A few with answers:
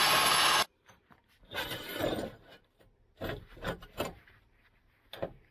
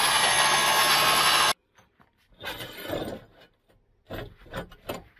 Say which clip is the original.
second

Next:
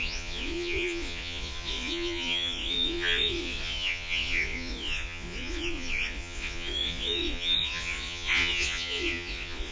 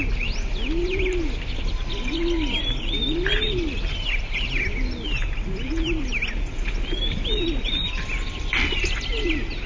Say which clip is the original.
second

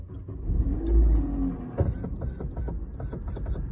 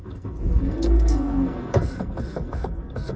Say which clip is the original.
first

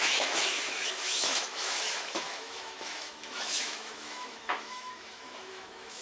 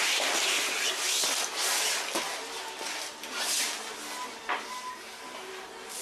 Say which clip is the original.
second